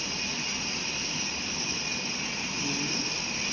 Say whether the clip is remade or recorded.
recorded